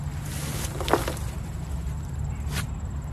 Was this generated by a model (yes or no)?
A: no